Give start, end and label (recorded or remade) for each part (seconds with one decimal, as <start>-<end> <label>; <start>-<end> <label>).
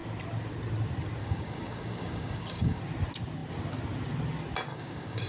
0.0-1.2 recorded; 1.2-2.8 remade; 2.8-4.7 recorded; 4.7-5.3 remade